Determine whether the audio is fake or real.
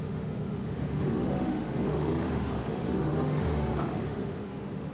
fake